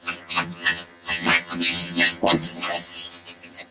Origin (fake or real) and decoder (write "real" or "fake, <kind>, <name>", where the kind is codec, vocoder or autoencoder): fake, vocoder, HiFi-GAN